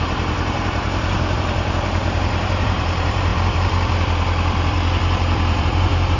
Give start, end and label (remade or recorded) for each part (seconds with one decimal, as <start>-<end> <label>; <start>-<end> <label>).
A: 0.0-3.3 remade; 3.3-5.6 recorded; 5.6-6.2 remade